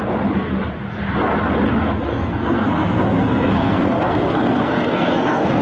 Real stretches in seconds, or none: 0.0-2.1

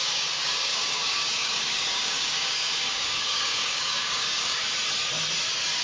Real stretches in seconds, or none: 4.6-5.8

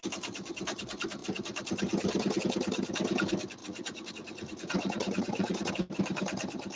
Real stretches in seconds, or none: 0.0-3.6; 5.7-6.8

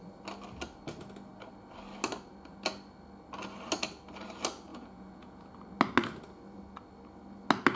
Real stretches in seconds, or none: 0.0-4.7; 5.5-7.8